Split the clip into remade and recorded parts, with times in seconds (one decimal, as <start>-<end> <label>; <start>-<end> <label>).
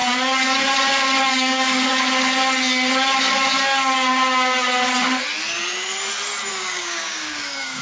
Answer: 0.0-1.3 recorded; 1.3-1.9 remade; 1.9-6.5 recorded; 6.5-7.8 remade